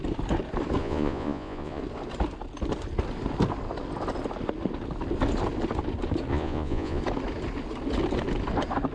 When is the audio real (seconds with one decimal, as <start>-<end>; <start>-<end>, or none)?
0.0-0.8; 1.8-6.3; 7.0-8.9